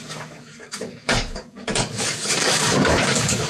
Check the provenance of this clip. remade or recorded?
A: remade